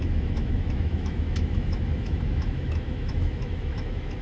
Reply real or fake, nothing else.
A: fake